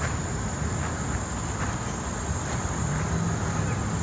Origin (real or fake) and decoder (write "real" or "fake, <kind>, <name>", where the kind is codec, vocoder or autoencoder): real